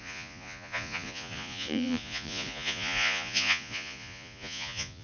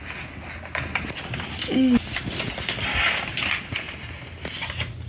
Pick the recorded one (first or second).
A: second